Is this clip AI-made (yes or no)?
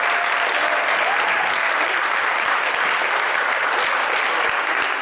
no